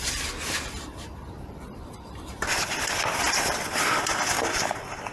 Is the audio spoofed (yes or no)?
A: yes